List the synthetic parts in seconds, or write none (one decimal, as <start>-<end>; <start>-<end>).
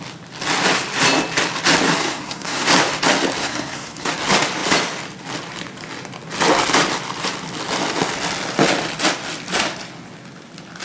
2.0-2.7; 3.4-4.1